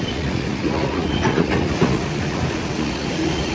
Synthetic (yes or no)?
yes